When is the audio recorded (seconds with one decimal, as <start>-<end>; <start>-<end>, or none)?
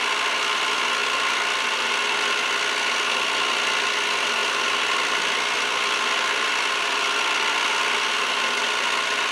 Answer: 0.0-9.3